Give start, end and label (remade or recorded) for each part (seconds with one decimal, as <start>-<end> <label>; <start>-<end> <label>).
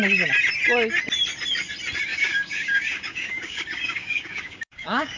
0.0-2.1 recorded; 2.1-5.2 remade